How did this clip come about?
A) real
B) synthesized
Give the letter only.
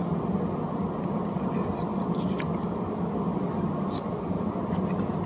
A